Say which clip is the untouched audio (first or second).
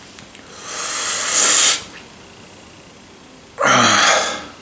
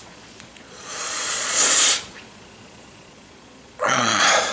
first